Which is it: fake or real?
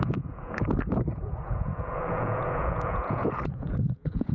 fake